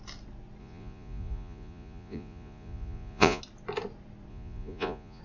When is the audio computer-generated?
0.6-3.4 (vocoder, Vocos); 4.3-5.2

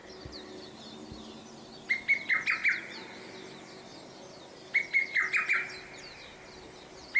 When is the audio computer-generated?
none